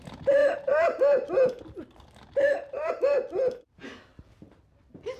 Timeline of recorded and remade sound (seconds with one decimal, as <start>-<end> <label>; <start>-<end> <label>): 0.0-5.2 recorded